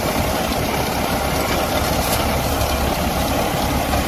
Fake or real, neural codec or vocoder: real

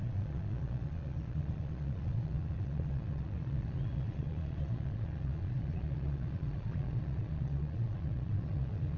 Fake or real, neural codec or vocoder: fake, vocoder, Vocos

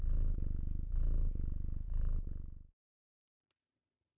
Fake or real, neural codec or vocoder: real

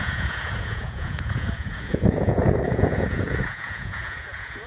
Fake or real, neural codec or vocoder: fake, vocoder, Vocos